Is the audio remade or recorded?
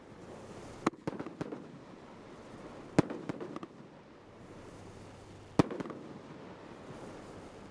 recorded